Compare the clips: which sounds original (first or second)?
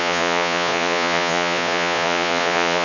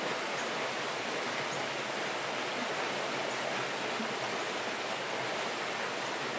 second